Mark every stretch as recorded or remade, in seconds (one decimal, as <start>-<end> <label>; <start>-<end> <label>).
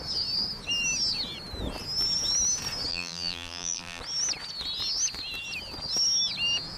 0.0-2.9 recorded; 2.9-4.0 remade; 4.0-6.8 recorded